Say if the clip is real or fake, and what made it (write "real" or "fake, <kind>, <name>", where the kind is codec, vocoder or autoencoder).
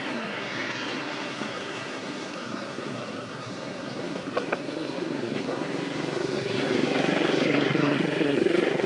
fake, codec, SNAC